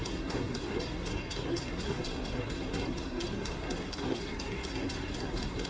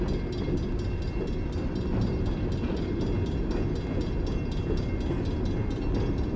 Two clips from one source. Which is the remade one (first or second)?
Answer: first